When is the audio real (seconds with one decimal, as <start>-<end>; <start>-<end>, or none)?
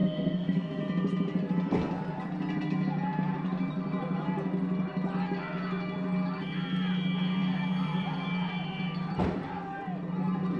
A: 0.8-10.6